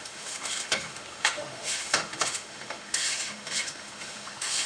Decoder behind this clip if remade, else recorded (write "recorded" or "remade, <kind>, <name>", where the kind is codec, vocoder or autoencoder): remade, autoencoder, DAC-VAE